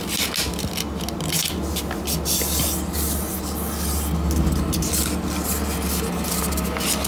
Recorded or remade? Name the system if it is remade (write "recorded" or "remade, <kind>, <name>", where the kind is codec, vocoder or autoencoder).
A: recorded